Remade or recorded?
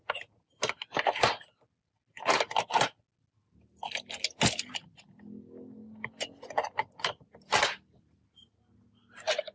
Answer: recorded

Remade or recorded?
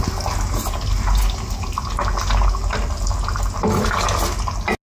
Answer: recorded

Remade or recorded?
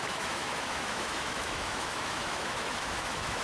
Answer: remade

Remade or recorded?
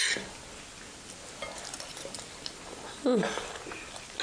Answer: recorded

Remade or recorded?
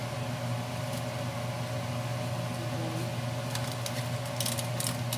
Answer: recorded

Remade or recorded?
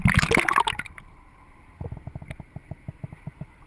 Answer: recorded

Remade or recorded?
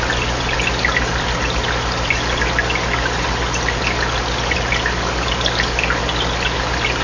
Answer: recorded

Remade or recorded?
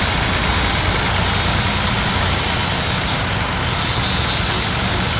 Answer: recorded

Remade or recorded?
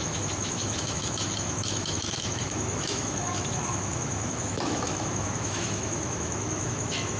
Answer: remade